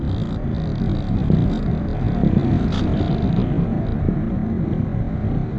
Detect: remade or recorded recorded